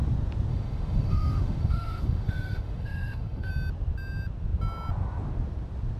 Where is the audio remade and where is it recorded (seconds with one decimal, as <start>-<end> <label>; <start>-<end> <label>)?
0.0-0.5 recorded; 0.5-3.5 remade; 3.5-6.0 recorded